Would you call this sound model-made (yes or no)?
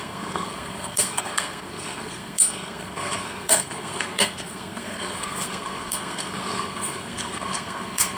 yes